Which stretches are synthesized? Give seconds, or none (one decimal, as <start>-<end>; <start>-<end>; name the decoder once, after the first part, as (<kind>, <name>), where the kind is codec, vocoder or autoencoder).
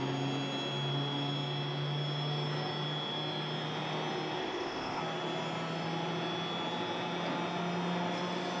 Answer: 4.4-5.0 (codec, ZipCodec)